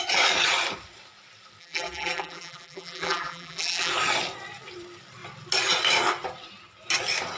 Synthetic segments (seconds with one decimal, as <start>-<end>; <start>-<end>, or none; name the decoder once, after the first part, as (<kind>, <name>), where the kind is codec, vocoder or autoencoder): 1.6-3.9 (vocoder, BigVGAN v2)